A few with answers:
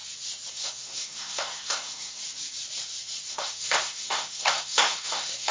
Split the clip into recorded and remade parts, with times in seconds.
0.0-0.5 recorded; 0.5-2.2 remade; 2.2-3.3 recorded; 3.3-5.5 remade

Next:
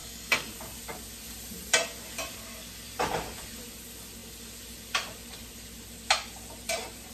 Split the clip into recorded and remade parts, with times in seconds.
0.0-0.5 remade; 0.5-7.1 recorded

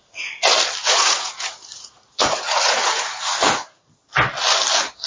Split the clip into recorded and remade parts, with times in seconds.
0.0-0.8 recorded; 0.8-3.9 remade; 3.9-5.1 recorded

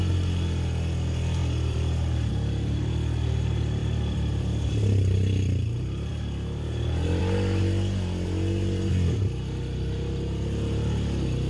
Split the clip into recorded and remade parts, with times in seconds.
0.0-1.4 recorded; 1.4-2.3 remade; 2.3-3.8 recorded; 3.8-4.7 remade; 4.7-11.5 recorded

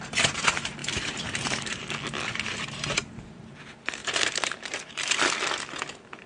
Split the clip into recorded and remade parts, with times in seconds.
0.0-0.8 recorded; 0.8-1.7 remade; 1.7-4.0 recorded; 4.0-5.2 remade; 5.2-6.3 recorded

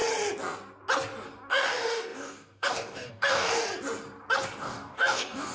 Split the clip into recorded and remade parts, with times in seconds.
0.0-1.5 recorded; 1.5-3.6 remade; 3.6-4.6 recorded; 4.6-5.5 remade